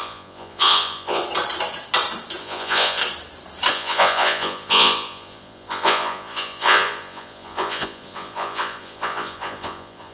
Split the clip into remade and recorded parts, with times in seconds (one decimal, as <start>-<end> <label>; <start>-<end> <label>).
0.0-1.2 remade; 1.2-2.4 recorded; 2.4-3.0 remade; 3.0-3.7 recorded; 3.7-10.1 remade